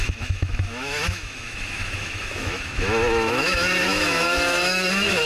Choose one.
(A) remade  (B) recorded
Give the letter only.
A